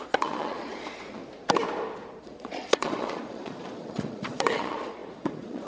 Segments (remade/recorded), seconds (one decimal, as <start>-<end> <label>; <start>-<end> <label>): 0.0-1.2 remade; 1.2-2.2 recorded; 2.2-5.7 remade